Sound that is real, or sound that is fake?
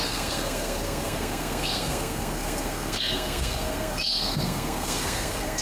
fake